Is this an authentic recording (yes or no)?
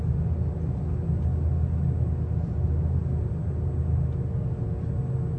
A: yes